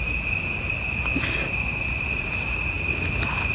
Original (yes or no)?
yes